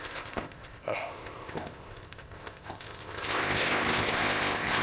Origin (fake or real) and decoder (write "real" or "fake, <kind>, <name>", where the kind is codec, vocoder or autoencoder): fake, codec, ZipCodec